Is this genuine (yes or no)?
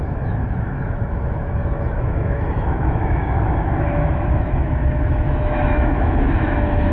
no